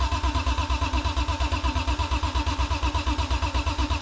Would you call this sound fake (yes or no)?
no